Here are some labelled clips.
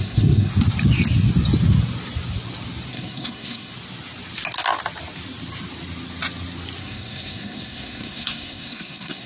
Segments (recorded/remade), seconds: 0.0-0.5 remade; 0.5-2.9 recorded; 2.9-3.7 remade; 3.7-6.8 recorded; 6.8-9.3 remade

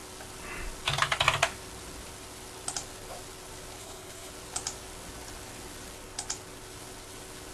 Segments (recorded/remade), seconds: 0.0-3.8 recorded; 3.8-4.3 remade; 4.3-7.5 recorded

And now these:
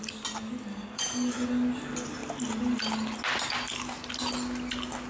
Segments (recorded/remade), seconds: 0.0-0.7 recorded; 0.7-1.3 remade; 1.3-5.1 recorded